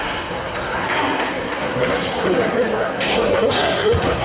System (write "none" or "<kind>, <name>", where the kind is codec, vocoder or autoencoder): codec, SNAC